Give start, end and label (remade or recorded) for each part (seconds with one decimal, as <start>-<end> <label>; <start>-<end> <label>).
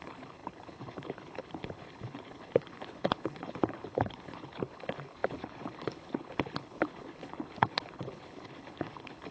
0.0-9.3 remade